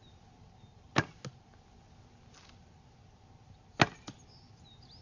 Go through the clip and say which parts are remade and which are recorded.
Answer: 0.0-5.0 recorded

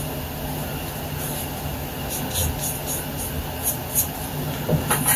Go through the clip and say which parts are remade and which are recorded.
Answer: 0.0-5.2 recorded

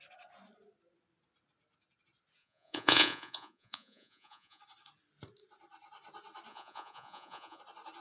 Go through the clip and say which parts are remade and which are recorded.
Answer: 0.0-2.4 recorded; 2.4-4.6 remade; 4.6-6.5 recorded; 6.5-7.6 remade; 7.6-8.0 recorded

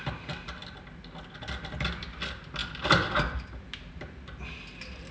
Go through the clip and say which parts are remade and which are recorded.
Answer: 0.0-5.1 recorded

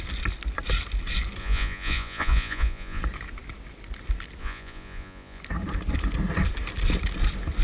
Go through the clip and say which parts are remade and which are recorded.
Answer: 0.0-1.4 recorded; 1.4-3.0 remade; 3.0-4.4 recorded; 4.4-5.4 remade; 5.4-7.6 recorded

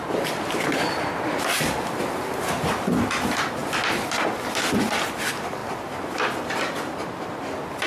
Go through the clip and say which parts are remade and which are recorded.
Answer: 0.0-7.9 recorded

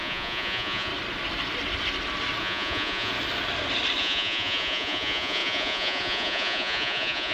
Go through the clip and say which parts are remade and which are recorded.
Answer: 0.0-0.9 remade; 0.9-2.4 recorded; 2.4-3.1 remade; 3.1-4.0 recorded; 4.0-7.3 remade